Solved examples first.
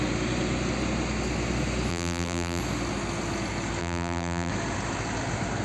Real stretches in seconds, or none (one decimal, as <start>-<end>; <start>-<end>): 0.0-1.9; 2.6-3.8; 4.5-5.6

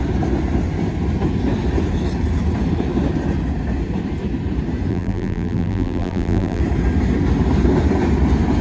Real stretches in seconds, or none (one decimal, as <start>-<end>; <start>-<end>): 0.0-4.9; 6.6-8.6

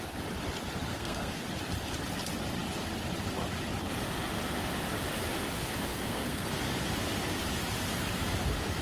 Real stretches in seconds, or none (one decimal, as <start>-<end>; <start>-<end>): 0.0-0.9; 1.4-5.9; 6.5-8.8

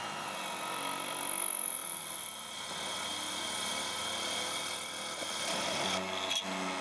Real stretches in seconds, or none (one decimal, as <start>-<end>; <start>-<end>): 0.0-6.8

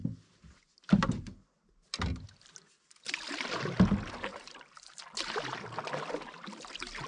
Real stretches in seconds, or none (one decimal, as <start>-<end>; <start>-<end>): 0.0-4.3; 5.0-7.1